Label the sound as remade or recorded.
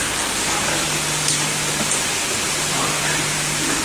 recorded